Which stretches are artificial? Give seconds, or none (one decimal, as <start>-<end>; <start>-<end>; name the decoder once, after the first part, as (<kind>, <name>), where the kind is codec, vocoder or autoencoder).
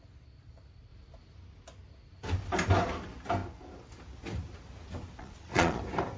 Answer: 5.2-5.8 (vocoder, Vocos)